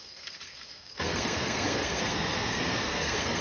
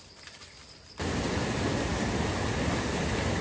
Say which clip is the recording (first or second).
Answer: second